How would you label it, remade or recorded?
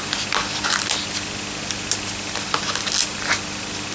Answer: recorded